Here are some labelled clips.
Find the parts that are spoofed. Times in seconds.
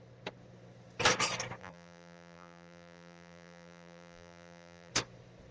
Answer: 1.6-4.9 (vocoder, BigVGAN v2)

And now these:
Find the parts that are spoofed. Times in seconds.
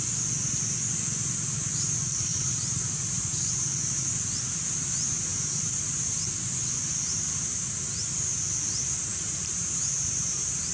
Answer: 2.3-3.2 (vocoder, BigVGAN v2); 5.3-6.4; 9.1-10.7